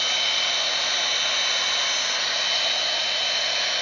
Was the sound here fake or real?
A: real